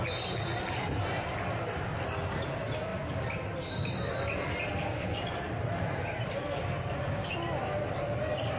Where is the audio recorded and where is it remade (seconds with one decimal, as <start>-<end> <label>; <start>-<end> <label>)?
0.0-8.6 recorded